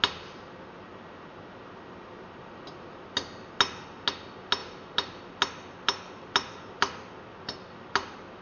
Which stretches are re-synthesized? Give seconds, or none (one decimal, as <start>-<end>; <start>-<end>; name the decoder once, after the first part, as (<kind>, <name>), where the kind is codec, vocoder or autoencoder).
none